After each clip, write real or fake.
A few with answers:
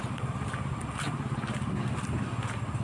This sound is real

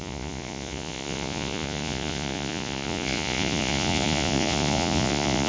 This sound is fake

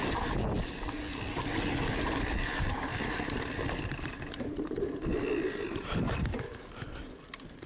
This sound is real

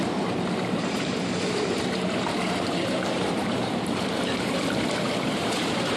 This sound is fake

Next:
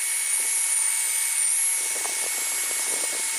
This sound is real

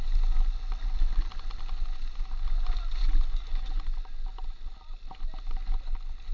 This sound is real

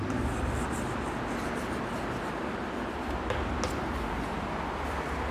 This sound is real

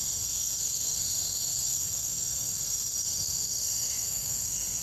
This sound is fake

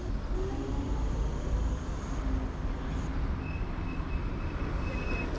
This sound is real